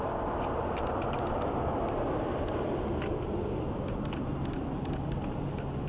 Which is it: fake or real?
real